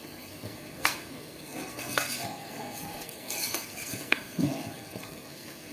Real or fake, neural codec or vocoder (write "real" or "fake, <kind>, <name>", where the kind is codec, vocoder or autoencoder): fake, codec, SNAC